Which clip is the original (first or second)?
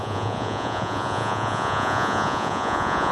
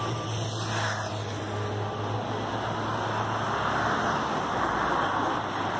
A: second